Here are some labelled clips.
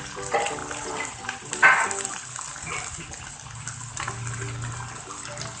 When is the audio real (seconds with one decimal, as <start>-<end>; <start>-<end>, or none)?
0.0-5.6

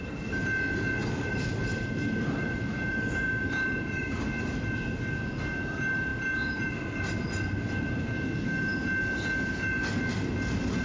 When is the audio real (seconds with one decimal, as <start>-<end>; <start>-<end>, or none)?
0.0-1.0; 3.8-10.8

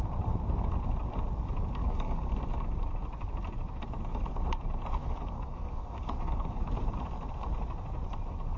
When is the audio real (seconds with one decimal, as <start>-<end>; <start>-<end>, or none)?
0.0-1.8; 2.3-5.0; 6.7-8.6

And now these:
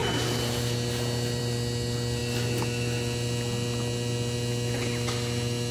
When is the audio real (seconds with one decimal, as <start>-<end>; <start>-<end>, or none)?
0.0-5.7

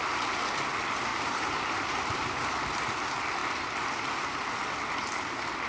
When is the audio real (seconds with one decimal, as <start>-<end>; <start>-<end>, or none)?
0.0-1.1; 2.9-5.7

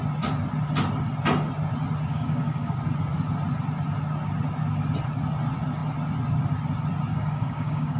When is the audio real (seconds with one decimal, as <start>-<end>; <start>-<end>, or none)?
0.0-2.1; 2.7-7.1

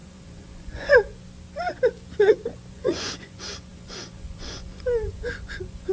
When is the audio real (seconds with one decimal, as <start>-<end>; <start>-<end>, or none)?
1.1-2.7

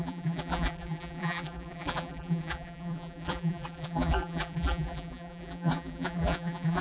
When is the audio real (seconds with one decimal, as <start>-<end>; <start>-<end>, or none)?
none